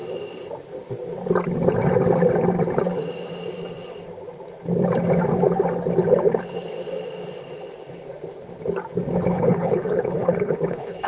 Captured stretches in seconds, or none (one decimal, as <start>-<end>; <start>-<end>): 0.0-9.3